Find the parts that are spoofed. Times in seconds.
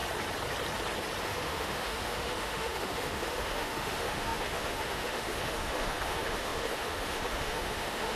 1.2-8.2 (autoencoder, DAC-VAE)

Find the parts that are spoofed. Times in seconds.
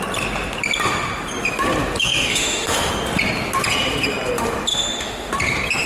2.0-2.9 (autoencoder, DAC-VAE); 4.7-5.3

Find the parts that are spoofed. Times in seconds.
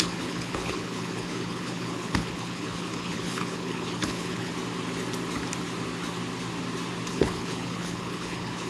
0.0-4.5 (codec, HILCodec); 7.1-8.7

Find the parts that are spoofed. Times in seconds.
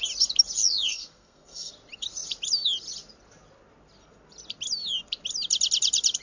0.9-1.7 (codec, SNAC)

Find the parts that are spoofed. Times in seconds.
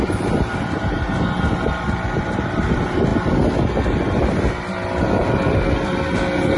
none